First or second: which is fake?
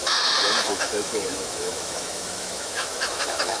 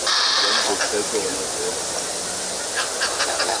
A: first